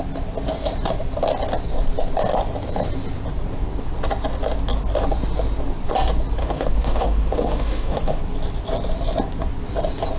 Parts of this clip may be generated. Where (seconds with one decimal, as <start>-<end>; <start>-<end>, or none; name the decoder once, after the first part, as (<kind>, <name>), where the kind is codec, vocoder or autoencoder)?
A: 6.4-8.2 (autoencoder, DAC-VAE)